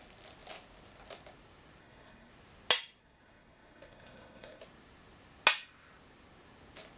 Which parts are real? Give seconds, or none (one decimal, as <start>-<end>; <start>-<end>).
0.0-1.8; 2.3-3.0; 4.6-7.0